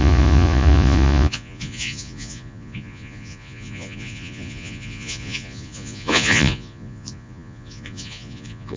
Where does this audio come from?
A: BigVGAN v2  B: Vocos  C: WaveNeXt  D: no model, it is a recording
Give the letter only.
B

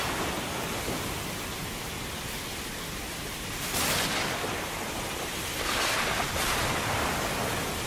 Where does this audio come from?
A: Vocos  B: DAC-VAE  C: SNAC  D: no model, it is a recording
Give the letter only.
D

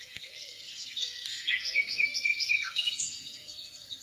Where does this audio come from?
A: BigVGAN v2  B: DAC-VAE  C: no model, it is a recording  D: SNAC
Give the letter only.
D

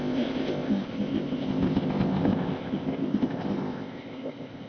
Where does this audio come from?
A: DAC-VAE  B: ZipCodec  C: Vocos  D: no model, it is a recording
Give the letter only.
B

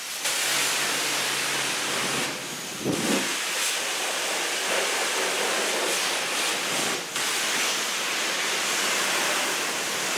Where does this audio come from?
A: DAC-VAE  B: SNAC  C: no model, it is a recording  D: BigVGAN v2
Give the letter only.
C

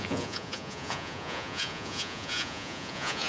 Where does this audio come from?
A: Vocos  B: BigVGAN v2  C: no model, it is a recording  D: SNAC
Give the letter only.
A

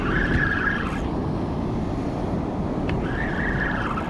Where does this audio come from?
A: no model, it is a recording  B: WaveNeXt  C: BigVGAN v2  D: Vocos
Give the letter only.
A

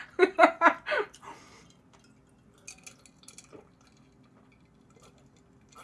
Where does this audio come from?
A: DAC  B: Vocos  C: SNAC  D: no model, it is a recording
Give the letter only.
D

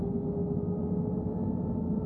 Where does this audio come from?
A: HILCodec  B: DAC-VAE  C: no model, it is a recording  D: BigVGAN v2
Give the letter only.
C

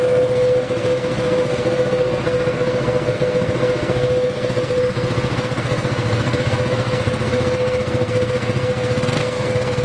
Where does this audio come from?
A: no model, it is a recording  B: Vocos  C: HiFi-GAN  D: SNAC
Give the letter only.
D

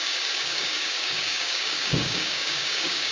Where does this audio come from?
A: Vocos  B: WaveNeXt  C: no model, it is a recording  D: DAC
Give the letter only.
D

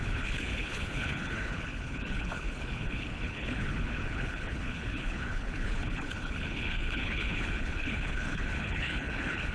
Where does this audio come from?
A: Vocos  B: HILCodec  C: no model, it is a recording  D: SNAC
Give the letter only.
B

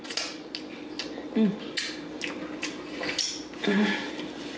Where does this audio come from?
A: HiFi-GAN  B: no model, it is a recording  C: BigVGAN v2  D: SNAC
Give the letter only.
B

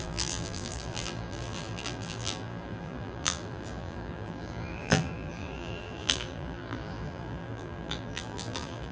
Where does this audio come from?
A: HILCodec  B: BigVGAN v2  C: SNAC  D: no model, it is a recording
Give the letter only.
B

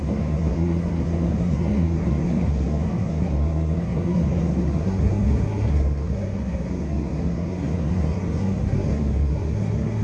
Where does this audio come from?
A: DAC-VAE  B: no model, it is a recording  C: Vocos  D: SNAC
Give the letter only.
D